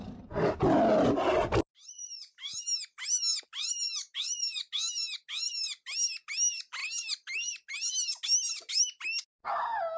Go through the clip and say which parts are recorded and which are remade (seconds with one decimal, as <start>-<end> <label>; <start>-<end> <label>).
0.0-10.0 recorded